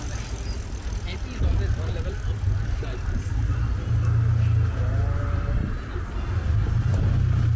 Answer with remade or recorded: recorded